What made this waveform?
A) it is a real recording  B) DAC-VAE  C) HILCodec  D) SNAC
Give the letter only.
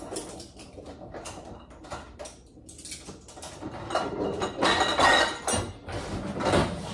A